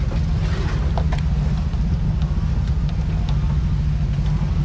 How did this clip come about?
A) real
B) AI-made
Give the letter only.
A